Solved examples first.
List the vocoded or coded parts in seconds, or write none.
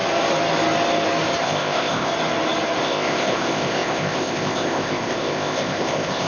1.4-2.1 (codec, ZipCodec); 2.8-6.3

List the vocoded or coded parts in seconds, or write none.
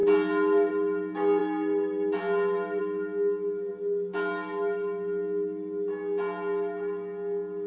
none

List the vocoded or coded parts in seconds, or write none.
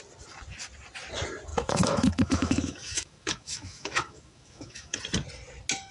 1.5-5.0 (autoencoder, DAC-VAE)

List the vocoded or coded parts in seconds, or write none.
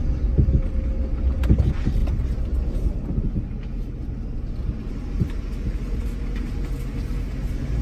none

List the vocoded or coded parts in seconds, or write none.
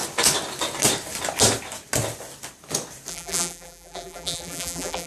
3.1-5.1 (vocoder, BigVGAN v2)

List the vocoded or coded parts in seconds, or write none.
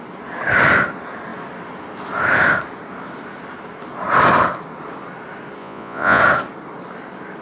5.6-6.2 (vocoder, Vocos)